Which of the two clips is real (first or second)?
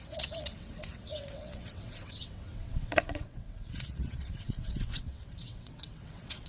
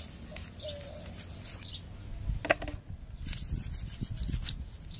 second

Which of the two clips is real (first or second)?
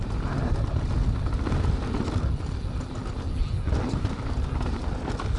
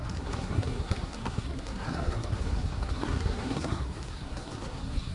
first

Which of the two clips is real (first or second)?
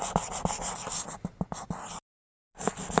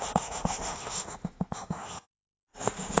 first